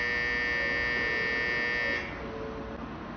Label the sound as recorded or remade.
recorded